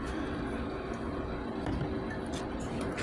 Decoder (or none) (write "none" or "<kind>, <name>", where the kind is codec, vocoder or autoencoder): none